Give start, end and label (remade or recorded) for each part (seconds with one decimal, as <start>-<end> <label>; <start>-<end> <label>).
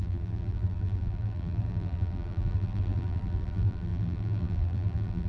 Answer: 0.0-5.3 remade